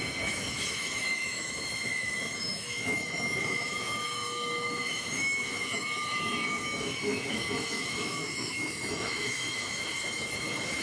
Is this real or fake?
fake